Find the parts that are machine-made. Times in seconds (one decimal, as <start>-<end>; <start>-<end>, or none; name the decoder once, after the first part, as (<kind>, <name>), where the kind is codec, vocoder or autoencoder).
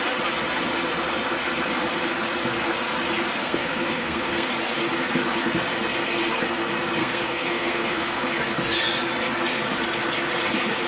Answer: 3.4-4.5 (codec, SNAC); 7.0-8.2